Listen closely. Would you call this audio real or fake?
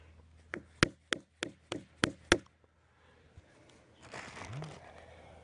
real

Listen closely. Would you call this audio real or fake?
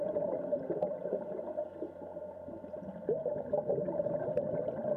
fake